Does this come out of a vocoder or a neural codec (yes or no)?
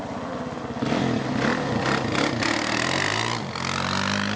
no